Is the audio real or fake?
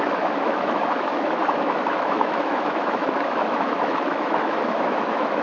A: fake